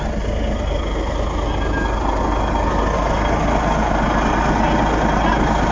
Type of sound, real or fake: real